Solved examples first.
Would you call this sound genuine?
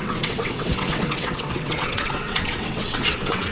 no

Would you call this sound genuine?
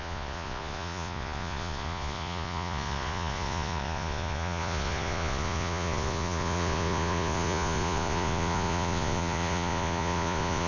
no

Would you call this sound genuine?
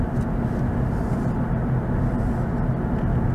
yes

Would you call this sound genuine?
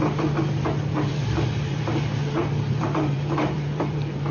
no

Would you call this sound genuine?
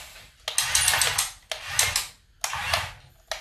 yes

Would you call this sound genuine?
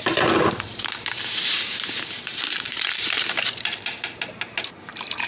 no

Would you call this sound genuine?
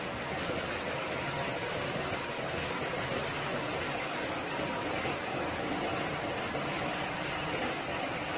yes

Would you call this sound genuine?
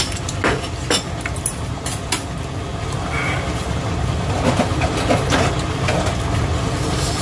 yes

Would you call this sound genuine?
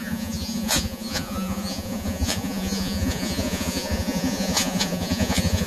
no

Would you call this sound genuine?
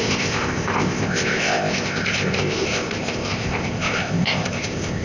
no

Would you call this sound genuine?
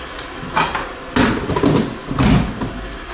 yes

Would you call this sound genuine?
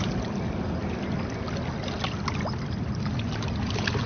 yes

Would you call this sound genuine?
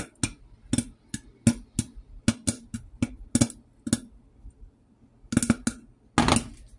yes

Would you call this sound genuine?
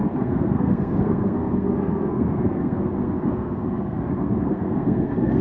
no